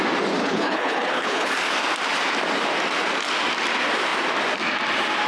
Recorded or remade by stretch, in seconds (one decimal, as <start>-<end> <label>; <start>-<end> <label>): 0.0-0.4 recorded; 0.4-1.5 remade; 1.5-5.3 recorded